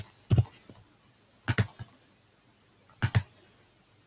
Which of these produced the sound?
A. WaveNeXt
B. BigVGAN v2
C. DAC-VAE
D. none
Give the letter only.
D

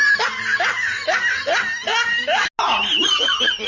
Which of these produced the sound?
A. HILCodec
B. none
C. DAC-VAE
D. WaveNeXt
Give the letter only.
B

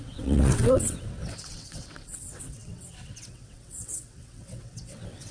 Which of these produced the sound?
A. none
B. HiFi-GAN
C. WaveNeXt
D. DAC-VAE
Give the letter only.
C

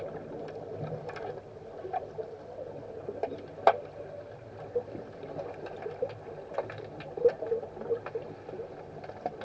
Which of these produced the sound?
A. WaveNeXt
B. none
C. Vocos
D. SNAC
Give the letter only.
B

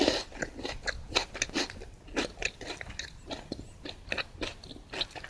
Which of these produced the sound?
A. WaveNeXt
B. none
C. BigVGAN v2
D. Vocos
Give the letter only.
B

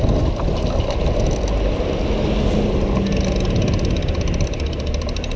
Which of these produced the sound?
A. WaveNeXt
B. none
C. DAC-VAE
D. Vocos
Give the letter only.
B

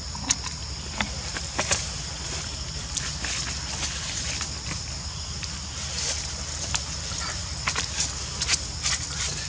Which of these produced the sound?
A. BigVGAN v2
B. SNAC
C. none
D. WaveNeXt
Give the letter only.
C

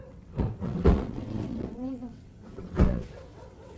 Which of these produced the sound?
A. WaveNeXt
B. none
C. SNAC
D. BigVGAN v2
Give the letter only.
A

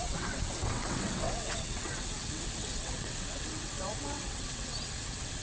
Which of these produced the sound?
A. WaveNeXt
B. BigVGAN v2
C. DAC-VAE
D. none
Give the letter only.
A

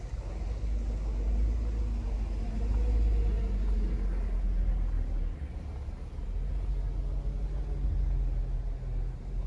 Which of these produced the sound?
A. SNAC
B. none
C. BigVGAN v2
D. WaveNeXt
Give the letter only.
B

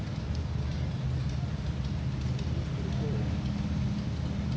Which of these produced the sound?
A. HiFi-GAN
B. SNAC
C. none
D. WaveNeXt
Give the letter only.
C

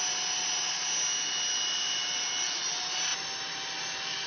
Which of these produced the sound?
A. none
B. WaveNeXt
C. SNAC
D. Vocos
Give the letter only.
A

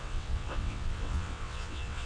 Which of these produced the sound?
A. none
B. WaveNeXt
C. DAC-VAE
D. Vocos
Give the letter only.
B